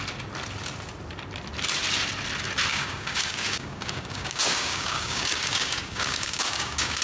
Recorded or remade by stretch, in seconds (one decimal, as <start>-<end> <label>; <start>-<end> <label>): 0.0-2.7 recorded; 2.7-7.0 remade